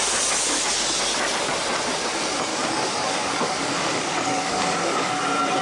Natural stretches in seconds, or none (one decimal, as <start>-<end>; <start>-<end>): 0.0-2.5; 5.1-5.6